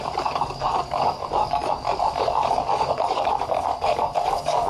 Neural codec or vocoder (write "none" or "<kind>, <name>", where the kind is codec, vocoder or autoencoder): codec, DAC